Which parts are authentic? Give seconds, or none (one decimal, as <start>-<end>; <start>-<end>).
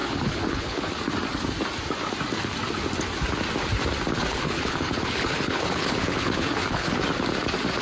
0.9-4.3; 7.0-7.8